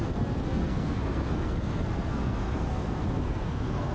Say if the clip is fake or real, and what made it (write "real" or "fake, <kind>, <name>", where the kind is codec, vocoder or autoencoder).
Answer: fake, codec, SNAC